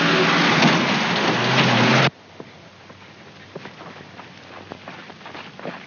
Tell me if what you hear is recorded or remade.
recorded